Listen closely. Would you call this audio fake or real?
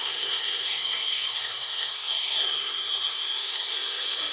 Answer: fake